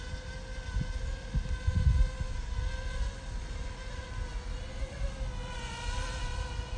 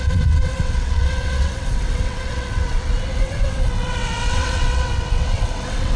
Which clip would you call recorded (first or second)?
first